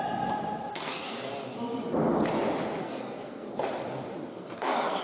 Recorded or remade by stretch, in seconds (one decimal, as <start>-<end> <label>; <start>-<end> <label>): 0.0-0.7 recorded; 0.7-1.3 remade; 1.3-2.8 recorded; 2.8-3.5 remade; 3.5-4.3 recorded; 4.3-5.0 remade